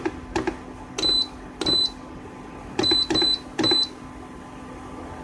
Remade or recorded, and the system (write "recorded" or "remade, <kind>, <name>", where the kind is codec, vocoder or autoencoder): recorded